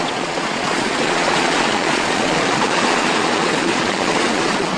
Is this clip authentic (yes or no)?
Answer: no